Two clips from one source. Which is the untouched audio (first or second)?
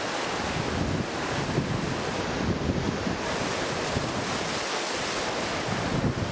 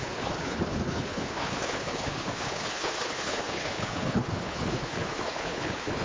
first